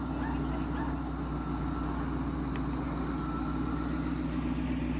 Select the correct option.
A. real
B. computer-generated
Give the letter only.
A